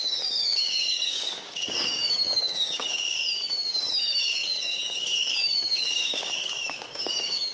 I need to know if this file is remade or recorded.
remade